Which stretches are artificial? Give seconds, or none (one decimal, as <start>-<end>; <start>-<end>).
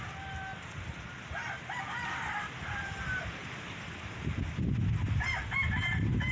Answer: none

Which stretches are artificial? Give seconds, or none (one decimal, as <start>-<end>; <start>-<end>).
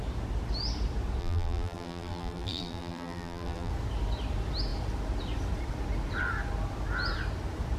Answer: 1.2-3.7